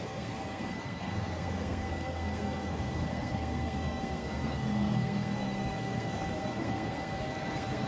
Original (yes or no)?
no